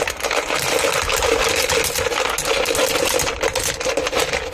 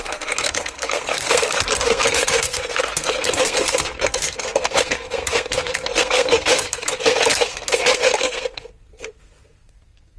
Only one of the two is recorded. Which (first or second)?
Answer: first